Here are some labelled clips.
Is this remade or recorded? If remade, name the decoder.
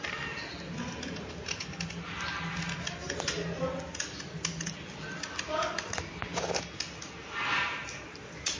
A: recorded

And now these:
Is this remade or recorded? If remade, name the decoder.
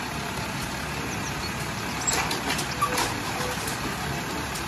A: recorded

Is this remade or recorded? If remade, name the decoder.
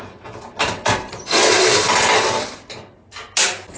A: recorded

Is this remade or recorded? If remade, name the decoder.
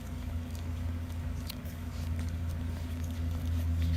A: remade, codec, DAC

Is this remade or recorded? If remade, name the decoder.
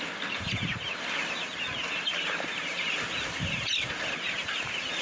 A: recorded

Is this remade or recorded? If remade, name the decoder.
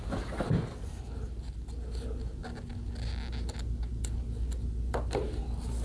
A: recorded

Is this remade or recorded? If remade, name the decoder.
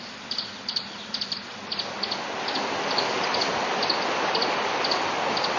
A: recorded